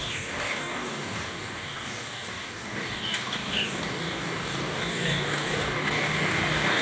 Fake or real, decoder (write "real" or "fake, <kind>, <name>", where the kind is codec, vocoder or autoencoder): fake, codec, DAC